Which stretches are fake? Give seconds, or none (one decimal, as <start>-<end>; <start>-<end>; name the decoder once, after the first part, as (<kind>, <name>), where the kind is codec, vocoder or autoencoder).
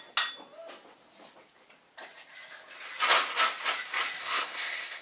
4.2-5.0 (codec, SNAC)